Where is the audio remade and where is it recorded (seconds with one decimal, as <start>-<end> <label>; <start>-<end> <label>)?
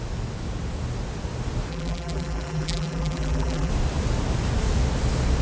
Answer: 0.0-1.7 recorded; 1.7-3.7 remade; 3.7-5.4 recorded